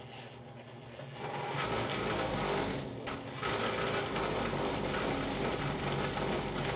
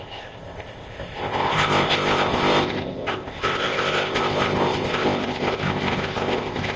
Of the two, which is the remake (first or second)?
second